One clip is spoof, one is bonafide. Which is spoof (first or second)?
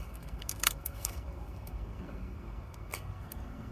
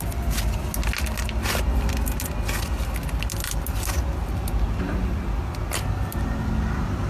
first